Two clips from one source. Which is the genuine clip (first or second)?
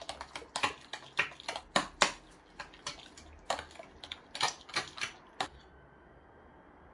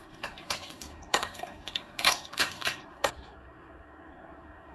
first